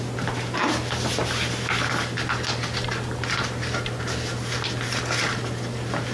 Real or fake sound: real